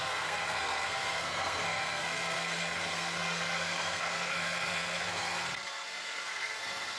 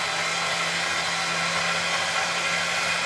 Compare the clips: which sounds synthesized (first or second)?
first